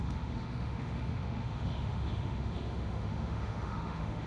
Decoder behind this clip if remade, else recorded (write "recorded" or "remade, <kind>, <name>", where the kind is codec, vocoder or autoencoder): remade, autoencoder, DAC-VAE